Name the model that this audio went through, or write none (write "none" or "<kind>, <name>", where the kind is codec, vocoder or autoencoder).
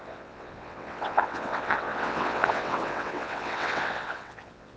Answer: vocoder, WaveNeXt